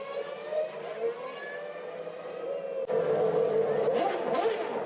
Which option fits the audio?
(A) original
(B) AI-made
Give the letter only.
A